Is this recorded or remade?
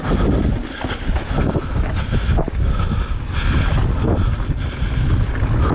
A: recorded